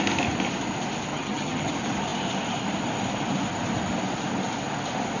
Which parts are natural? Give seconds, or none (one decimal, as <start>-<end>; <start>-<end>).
0.0-1.1; 1.7-5.2